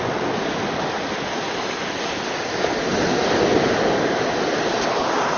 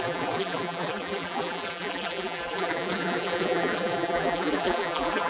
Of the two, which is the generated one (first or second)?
second